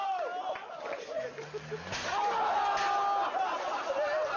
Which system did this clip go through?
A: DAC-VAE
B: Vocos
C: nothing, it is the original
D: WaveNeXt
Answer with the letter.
C